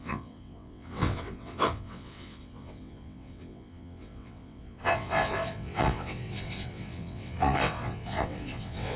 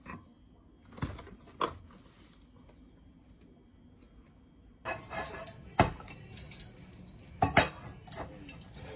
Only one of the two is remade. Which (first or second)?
first